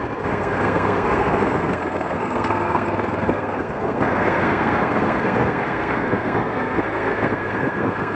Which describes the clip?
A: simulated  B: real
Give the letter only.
A